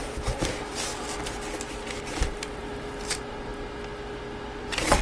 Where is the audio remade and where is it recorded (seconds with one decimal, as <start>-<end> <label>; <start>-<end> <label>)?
0.0-0.9 remade; 0.9-2.0 recorded; 2.0-2.6 remade; 2.6-3.1 recorded; 3.1-3.5 remade; 3.5-4.6 recorded; 4.6-5.0 remade